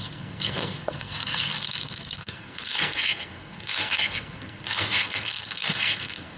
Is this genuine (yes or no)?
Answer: no